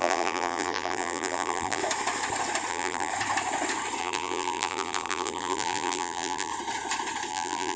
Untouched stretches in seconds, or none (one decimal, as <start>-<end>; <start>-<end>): 1.8-2.7; 3.1-4.0; 6.5-7.3